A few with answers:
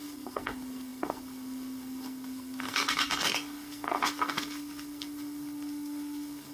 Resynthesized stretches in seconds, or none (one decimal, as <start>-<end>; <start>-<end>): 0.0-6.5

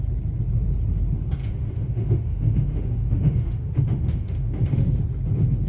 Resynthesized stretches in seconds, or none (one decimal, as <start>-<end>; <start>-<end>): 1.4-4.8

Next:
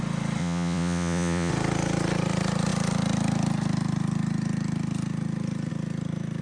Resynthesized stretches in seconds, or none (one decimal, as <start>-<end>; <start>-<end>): 0.4-1.5

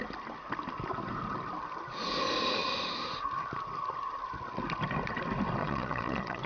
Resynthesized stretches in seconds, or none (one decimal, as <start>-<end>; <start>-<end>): 5.6-6.5

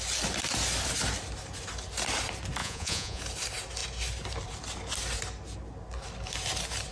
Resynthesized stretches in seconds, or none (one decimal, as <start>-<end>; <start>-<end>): 2.6-3.2

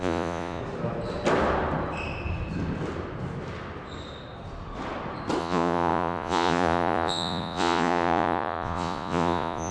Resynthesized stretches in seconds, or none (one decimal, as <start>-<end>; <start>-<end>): 0.0-0.6; 5.4-9.7

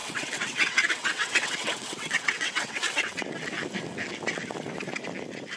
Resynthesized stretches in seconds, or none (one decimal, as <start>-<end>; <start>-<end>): 0.0-3.2